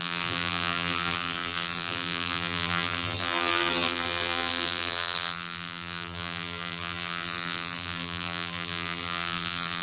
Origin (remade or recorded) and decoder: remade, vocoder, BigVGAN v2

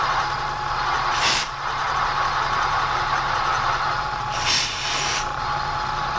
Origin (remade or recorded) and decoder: remade, vocoder, BigVGAN v2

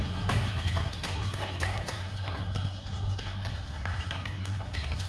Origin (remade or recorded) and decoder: remade, codec, SNAC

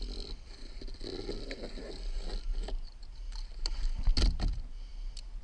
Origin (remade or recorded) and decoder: recorded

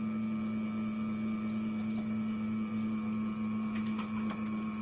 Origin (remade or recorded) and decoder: recorded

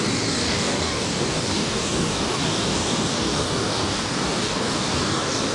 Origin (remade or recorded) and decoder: remade, codec, DAC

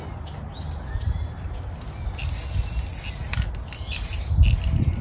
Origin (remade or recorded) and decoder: recorded